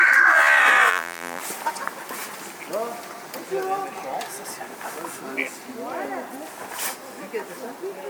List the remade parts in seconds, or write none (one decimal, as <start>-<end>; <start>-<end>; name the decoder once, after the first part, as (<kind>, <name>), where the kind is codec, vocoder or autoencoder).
0.9-1.4 (vocoder, BigVGAN v2)